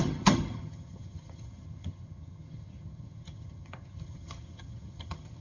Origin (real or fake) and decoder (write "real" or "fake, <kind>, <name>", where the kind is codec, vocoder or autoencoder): fake, vocoder, HiFi-GAN